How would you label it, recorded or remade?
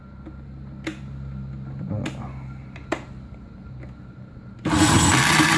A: recorded